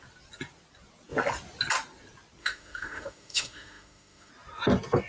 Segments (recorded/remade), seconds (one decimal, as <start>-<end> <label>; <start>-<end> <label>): 0.0-2.4 recorded; 2.4-4.3 remade; 4.3-5.1 recorded